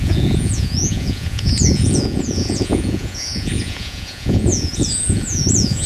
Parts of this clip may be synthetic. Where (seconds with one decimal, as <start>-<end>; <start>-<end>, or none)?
0.0-5.9